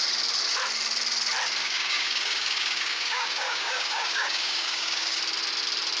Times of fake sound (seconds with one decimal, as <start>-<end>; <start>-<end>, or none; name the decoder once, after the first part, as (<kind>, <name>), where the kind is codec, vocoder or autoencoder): 1.6-5.2 (codec, DAC)